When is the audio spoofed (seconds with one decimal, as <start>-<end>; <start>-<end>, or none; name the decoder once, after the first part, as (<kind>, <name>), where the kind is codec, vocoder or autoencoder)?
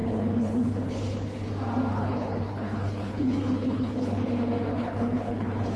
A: 0.0-1.5 (codec, HILCodec); 1.9-4.3; 4.7-5.8